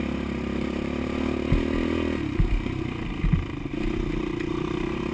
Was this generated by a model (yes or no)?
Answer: no